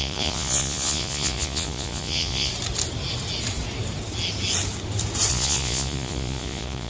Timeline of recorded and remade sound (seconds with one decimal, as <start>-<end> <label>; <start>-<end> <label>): 0.0-2.5 remade; 2.5-5.3 recorded; 5.3-6.9 remade